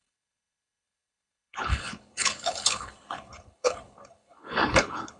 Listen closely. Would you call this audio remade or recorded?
remade